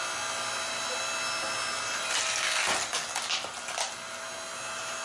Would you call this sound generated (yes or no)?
no